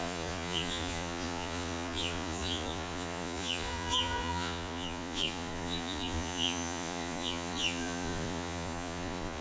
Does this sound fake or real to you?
fake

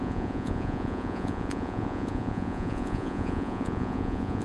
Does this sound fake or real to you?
fake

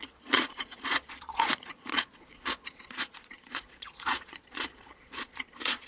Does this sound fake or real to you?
fake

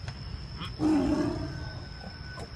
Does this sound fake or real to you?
real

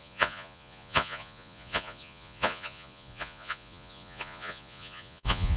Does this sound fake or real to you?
fake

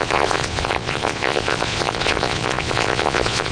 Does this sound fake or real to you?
fake